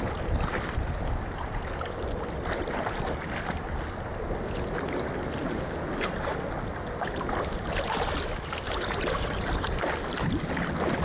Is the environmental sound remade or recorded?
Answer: recorded